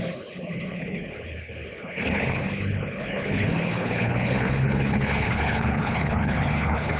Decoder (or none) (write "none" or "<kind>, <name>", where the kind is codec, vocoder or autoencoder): codec, HILCodec